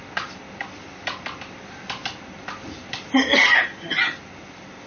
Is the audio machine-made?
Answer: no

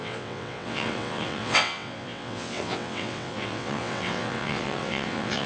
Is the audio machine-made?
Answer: yes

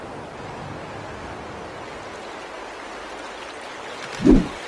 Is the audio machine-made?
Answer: no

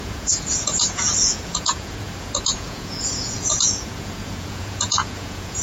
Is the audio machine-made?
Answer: yes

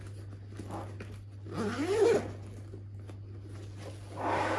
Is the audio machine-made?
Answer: no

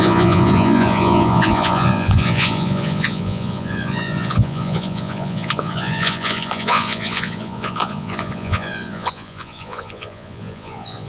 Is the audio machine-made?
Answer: yes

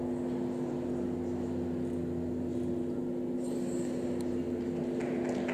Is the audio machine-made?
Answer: no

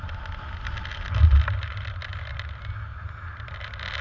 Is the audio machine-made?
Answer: no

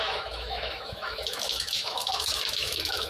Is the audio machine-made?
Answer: yes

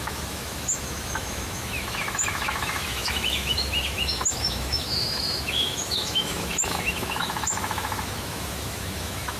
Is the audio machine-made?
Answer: yes